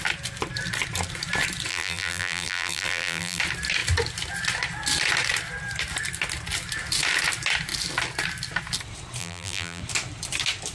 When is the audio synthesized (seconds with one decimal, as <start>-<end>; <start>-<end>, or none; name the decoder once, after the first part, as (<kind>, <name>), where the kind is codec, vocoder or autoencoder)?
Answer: 1.7-3.4 (vocoder, BigVGAN v2); 9.2-9.8